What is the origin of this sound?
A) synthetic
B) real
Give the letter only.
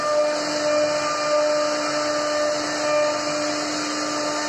B